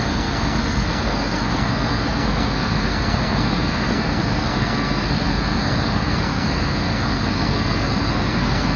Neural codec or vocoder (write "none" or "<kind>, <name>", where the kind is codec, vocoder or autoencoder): codec, SNAC